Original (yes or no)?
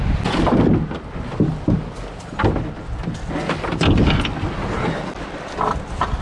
yes